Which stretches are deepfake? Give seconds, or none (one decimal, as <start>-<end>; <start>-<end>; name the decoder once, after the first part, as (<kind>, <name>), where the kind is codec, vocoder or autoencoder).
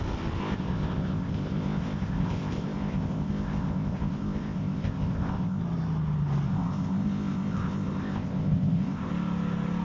0.4-5.6 (codec, ZipCodec); 6.5-9.1